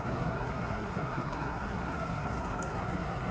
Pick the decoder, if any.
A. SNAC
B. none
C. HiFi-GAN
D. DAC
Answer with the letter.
A